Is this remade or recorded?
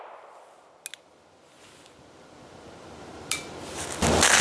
recorded